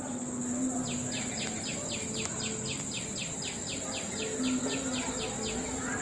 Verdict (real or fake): real